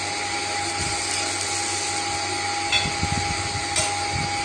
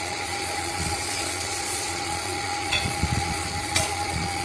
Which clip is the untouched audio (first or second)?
first